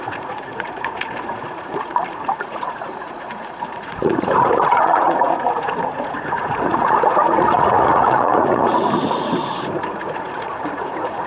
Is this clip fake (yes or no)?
yes